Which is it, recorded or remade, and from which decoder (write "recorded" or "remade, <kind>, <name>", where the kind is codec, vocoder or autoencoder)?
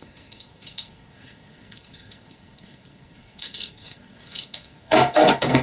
remade, codec, SNAC